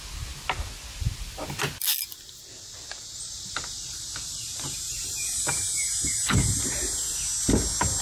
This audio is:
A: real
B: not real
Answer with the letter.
A